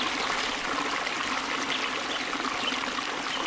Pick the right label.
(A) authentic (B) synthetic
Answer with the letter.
A